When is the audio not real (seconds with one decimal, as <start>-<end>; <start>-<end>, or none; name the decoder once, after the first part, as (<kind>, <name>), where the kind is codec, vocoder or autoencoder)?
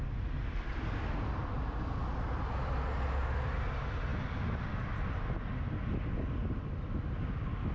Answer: none